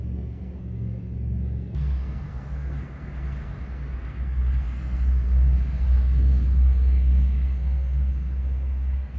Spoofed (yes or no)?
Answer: yes